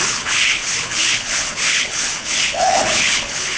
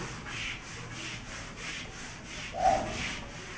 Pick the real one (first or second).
second